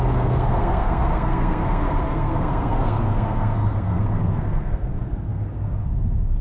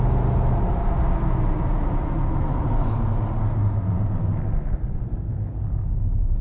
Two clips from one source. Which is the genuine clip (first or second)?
second